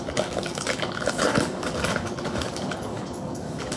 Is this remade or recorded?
remade